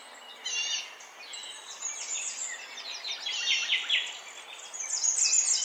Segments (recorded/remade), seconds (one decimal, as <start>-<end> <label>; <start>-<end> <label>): 0.0-5.6 recorded